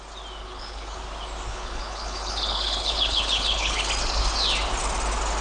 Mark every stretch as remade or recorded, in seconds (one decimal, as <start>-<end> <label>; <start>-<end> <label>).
0.0-0.4 recorded; 0.4-1.0 remade; 1.0-1.5 recorded; 1.5-3.9 remade; 3.9-5.4 recorded